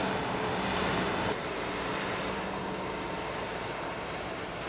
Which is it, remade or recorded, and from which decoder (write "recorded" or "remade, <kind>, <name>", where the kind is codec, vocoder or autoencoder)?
remade, vocoder, BigVGAN v2